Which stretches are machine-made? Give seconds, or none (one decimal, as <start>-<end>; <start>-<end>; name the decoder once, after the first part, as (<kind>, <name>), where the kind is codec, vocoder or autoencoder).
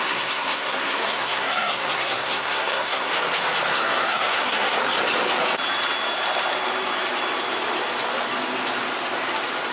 0.0-3.1 (codec, SNAC); 3.7-4.8